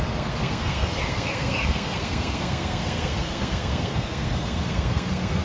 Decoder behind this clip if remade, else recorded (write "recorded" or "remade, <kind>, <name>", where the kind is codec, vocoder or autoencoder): remade, codec, SNAC